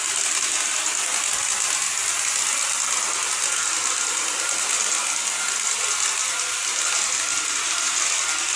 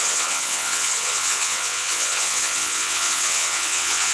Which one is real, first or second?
first